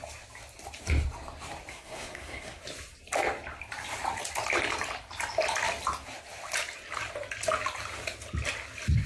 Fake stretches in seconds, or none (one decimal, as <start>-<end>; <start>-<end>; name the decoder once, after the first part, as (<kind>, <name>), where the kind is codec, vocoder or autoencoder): 1.7-2.6 (codec, SNAC)